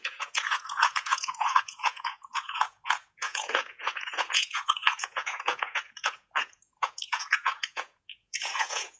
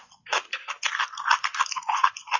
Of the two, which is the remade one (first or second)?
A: first